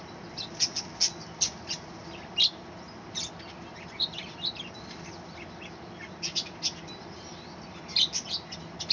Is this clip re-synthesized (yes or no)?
no